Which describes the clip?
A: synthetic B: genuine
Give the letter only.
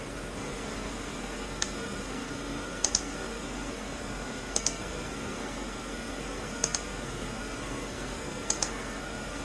A